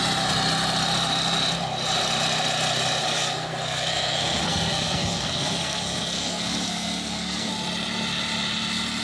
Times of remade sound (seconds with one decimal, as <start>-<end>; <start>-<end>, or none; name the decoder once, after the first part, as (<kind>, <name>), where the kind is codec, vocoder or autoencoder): 3.0-7.5 (codec, SNAC)